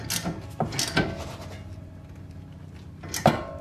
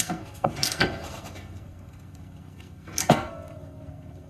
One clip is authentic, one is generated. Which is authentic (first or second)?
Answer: first